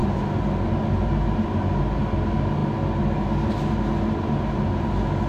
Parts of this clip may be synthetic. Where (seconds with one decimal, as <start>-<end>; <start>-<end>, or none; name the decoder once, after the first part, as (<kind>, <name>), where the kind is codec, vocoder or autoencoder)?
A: none

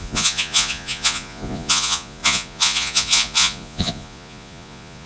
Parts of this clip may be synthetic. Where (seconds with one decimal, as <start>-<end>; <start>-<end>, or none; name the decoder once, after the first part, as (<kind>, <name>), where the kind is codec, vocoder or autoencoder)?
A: 0.0-5.1 (vocoder, Vocos)